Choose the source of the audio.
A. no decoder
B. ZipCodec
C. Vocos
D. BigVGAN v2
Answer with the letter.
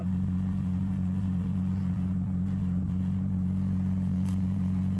C